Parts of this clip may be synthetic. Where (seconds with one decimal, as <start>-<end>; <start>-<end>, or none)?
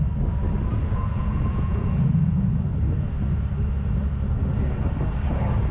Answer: 0.7-2.6